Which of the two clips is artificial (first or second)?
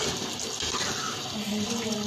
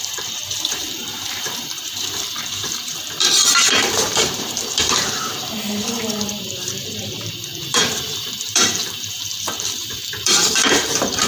second